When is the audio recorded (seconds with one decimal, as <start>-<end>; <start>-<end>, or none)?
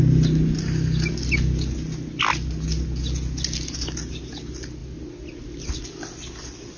0.0-6.8